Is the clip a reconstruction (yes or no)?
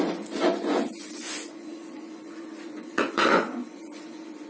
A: yes